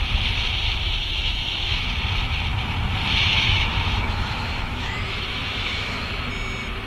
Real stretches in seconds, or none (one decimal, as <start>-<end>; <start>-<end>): 0.0-1.0; 1.8-3.3; 6.1-6.9